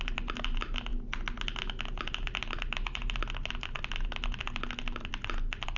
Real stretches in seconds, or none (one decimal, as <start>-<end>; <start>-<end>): 0.0-5.8